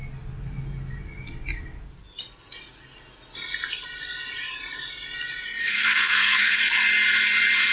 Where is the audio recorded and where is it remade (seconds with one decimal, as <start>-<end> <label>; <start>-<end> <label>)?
0.0-5.6 recorded; 5.6-6.6 remade; 6.6-7.7 recorded

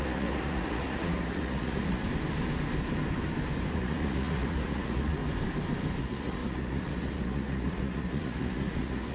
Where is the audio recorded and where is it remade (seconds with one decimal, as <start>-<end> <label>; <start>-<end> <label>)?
0.0-2.0 remade; 2.0-3.7 recorded; 3.7-5.2 remade; 5.2-6.0 recorded; 6.0-9.1 remade

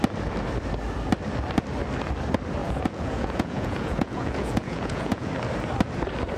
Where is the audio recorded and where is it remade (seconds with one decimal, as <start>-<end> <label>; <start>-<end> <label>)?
0.0-2.6 recorded; 2.6-5.3 remade; 5.3-6.4 recorded

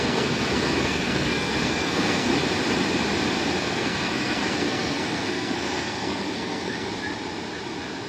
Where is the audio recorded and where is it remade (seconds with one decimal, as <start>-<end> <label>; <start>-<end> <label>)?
0.0-2.3 remade; 2.3-3.6 recorded; 3.6-6.9 remade; 6.9-8.1 recorded

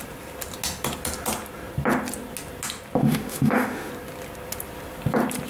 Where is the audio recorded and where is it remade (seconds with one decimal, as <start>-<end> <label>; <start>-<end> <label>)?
0.0-3.0 recorded; 3.0-3.9 remade; 3.9-5.5 recorded

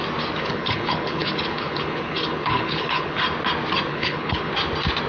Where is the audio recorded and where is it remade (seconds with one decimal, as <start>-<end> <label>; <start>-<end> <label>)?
0.0-0.4 recorded; 0.4-3.2 remade; 3.2-3.9 recorded; 3.9-4.5 remade; 4.5-5.1 recorded

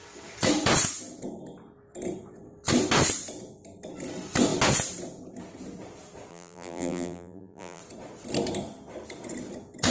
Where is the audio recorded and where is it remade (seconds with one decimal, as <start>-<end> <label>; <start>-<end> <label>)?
0.0-6.3 recorded; 6.3-7.8 remade; 7.8-9.9 recorded